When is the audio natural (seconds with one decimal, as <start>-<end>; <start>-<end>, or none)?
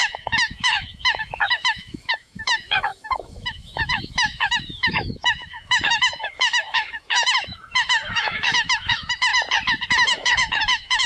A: 9.3-9.9